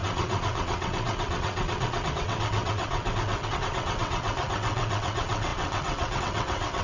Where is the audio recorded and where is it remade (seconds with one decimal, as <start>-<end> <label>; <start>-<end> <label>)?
0.0-6.8 remade

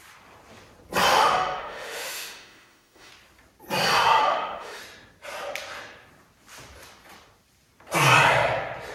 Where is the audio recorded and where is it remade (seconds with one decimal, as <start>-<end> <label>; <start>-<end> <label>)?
0.0-1.1 recorded; 1.1-3.1 remade; 3.1-4.2 recorded; 4.2-4.8 remade; 4.8-8.9 recorded

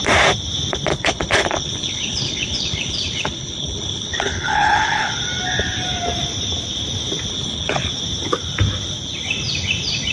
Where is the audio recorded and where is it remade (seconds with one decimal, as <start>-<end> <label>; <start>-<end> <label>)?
0.0-0.9 recorded; 0.9-5.1 remade; 5.1-7.3 recorded; 7.3-7.9 remade; 7.9-10.1 recorded

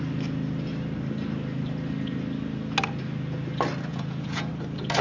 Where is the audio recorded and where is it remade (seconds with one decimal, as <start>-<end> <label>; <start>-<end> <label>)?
0.0-3.9 recorded; 3.9-4.5 remade; 4.5-5.0 recorded

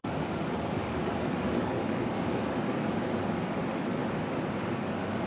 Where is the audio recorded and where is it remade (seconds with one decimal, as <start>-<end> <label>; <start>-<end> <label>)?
0.0-4.0 remade; 4.0-4.6 recorded; 4.6-5.3 remade